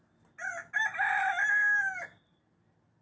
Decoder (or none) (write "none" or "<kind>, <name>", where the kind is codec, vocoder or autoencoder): none